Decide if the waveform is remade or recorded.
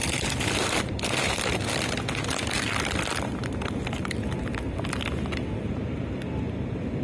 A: recorded